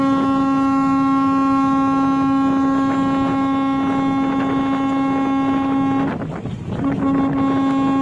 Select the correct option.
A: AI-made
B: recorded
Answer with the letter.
B